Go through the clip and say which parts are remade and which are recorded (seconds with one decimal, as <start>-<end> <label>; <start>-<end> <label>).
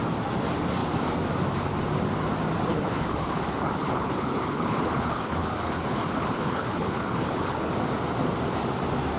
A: 0.0-2.7 recorded; 2.7-7.7 remade; 7.7-9.2 recorded